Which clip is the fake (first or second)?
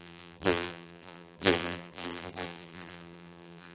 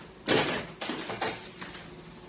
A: first